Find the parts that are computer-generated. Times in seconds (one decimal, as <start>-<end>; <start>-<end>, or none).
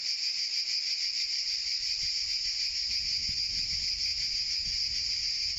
1.6-2.3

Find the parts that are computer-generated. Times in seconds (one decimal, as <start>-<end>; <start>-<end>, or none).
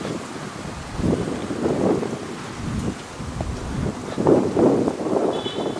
1.4-2.9; 4.0-4.7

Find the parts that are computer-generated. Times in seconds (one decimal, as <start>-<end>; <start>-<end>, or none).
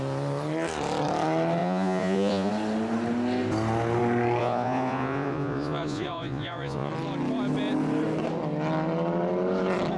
1.6-2.5; 4.4-6.9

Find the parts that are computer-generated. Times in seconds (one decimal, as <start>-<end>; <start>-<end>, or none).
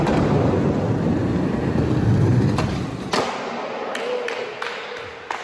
1.2-1.8; 2.3-3.1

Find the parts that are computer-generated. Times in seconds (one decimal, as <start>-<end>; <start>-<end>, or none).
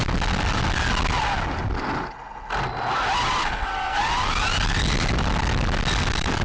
3.4-4.0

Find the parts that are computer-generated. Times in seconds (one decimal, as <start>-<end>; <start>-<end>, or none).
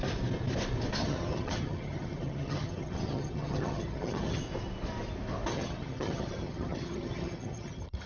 1.0-4.4; 5.5-8.1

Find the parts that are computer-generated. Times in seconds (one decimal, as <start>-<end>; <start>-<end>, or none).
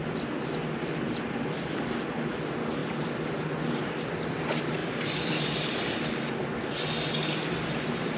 2.8-3.7; 4.8-6.3